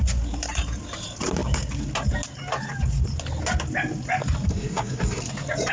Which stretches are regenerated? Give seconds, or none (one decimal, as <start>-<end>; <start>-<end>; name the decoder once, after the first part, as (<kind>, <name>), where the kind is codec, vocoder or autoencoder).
4.5-5.2 (codec, SNAC)